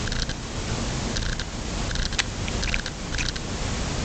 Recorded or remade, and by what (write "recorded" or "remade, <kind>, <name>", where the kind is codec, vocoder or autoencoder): recorded